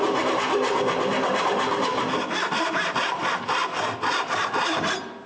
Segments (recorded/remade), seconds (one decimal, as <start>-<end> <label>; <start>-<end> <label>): 0.0-5.3 recorded